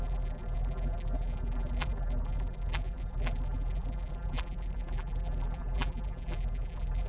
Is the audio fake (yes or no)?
yes